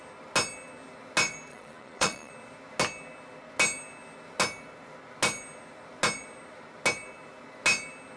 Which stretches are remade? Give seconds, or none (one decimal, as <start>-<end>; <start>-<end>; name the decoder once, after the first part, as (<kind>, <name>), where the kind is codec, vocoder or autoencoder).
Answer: 1.5-2.3 (vocoder, Vocos)